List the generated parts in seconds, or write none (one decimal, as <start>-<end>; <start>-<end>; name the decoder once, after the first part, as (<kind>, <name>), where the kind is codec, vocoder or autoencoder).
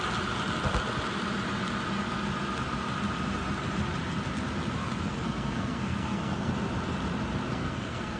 4.8-6.5 (codec, SNAC); 7.5-8.2